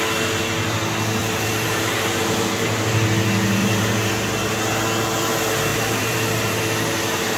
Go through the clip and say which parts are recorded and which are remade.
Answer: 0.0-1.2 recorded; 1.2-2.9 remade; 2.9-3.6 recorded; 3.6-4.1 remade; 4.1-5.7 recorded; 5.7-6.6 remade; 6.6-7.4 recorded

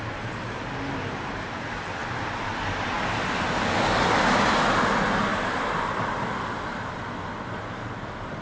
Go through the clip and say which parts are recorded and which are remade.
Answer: 0.0-2.0 recorded; 2.0-4.5 remade; 4.5-5.3 recorded; 5.3-6.1 remade; 6.1-8.4 recorded

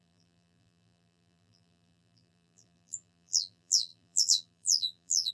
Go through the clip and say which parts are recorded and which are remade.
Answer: 0.0-5.3 remade

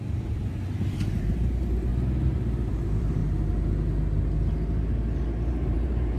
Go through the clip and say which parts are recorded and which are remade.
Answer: 0.0-1.9 remade; 1.9-2.7 recorded; 2.7-3.2 remade; 3.2-5.5 recorded; 5.5-6.2 remade

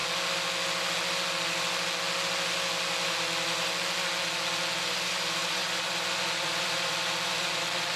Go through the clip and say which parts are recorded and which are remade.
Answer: 0.0-4.8 recorded; 4.8-8.0 remade

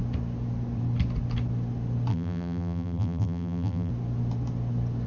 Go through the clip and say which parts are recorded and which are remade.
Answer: 0.0-2.1 recorded; 2.1-3.9 remade; 3.9-5.1 recorded

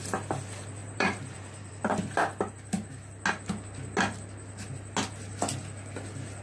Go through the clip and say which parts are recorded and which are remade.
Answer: 0.0-0.8 recorded; 0.8-1.7 remade; 1.7-6.4 recorded